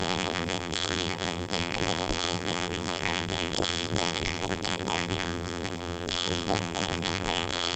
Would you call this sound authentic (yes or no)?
no